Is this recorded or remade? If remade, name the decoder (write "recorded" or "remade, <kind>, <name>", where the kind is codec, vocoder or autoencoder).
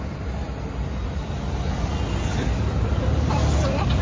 recorded